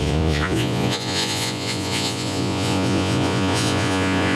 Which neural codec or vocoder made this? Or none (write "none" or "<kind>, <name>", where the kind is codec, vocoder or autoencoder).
vocoder, Vocos